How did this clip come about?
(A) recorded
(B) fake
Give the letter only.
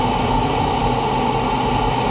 A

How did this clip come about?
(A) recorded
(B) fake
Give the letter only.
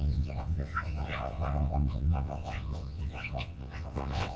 B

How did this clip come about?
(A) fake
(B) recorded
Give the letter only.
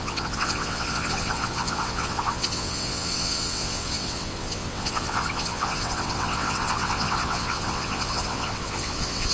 A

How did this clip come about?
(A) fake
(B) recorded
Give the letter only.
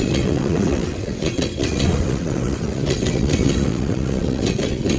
A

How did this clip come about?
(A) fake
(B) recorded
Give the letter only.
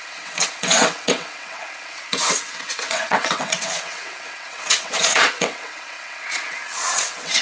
A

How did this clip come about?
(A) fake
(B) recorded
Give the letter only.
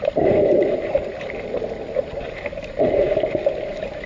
B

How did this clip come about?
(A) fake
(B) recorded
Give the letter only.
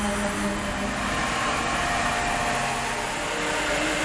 B